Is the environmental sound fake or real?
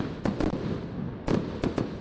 real